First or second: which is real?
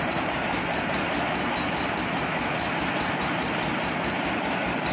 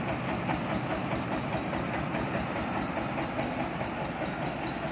second